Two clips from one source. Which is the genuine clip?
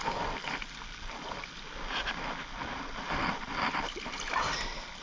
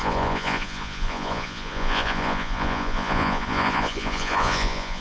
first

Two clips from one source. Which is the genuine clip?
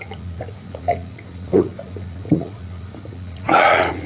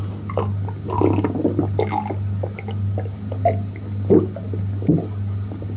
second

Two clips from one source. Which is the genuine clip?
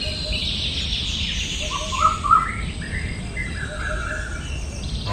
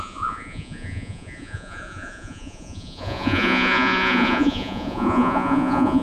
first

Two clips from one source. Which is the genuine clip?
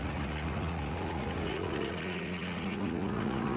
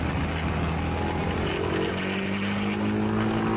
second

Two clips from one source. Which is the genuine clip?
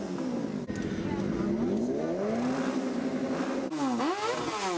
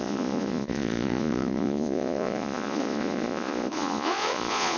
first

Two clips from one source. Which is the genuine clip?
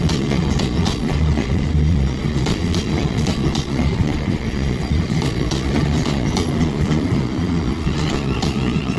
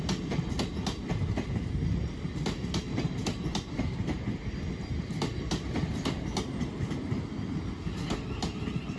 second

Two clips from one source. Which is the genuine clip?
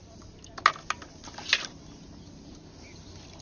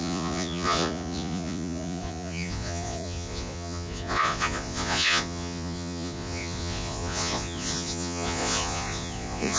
first